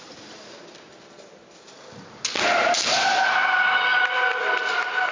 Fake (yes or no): no